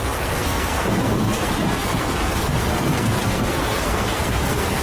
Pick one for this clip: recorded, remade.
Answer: remade